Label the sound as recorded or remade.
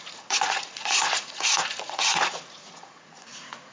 remade